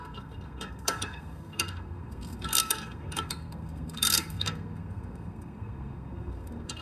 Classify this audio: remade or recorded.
remade